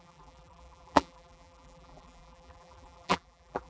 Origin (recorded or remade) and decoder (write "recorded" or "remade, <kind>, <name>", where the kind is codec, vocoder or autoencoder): remade, vocoder, BigVGAN v2